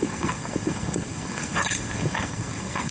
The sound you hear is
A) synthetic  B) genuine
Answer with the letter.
A